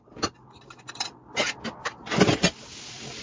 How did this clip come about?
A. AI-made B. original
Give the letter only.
B